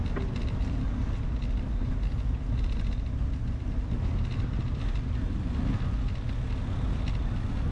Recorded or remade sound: recorded